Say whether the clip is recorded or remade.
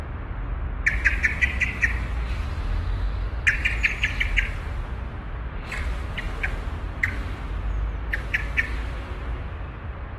recorded